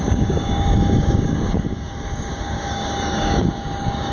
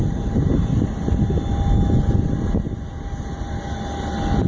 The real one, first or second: second